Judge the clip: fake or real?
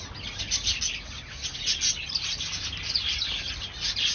real